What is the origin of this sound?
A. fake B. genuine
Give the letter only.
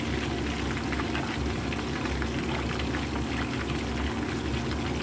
B